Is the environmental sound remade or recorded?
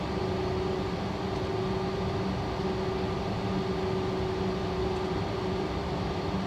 recorded